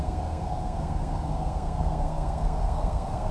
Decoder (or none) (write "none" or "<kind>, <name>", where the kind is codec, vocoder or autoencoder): codec, SNAC